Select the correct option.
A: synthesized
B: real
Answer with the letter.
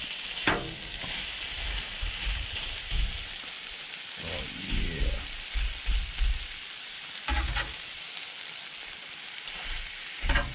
B